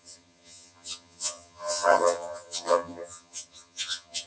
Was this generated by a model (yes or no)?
yes